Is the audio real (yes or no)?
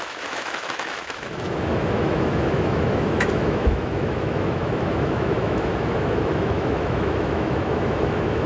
no